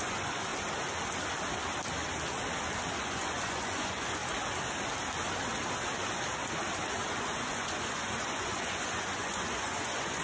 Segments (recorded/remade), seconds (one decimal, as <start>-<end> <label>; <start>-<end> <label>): 0.0-0.5 remade; 0.5-3.0 recorded; 3.0-4.2 remade; 4.2-6.9 recorded; 6.9-10.2 remade